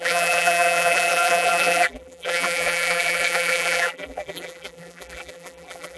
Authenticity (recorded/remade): remade